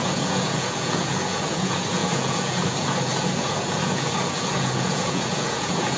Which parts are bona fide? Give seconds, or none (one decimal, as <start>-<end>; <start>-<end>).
none